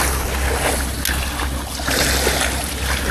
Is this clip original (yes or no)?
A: yes